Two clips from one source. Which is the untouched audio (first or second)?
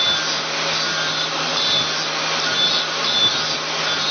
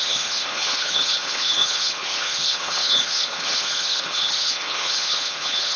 first